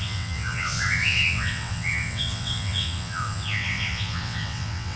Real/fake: fake